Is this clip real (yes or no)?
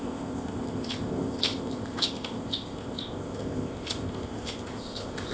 no